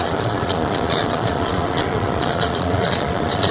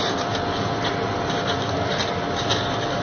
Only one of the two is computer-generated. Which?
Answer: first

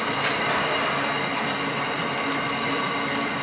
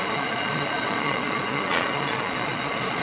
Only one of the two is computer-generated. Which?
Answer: second